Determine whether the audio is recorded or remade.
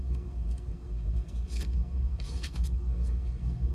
remade